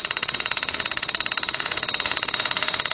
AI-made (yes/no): yes